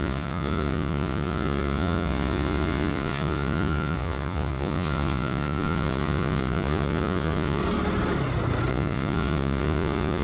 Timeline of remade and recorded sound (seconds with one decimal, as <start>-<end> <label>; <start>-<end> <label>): 0.0-7.6 remade; 7.6-8.7 recorded; 8.7-10.2 remade